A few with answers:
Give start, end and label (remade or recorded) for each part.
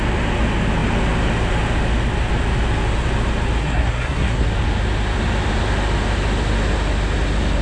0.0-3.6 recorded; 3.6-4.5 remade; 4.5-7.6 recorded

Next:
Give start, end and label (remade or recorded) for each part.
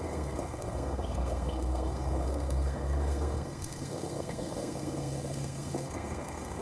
0.0-6.6 remade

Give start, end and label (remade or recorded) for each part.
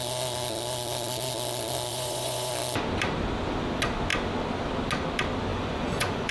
0.0-1.9 recorded; 1.9-2.5 remade; 2.5-5.5 recorded; 5.5-6.3 remade